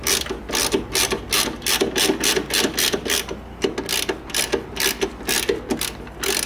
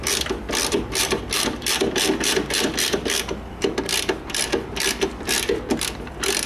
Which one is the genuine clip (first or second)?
first